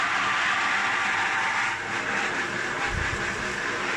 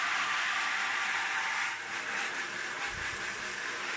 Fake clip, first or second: second